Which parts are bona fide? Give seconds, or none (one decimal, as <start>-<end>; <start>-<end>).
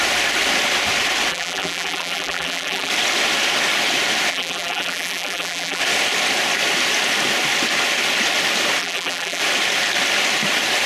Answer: 0.0-1.3; 2.9-4.3; 5.8-8.8; 9.4-10.9